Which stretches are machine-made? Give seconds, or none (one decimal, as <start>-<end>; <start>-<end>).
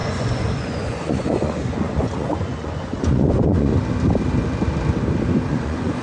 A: 0.0-3.7; 5.5-6.0